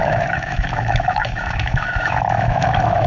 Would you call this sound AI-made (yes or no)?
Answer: yes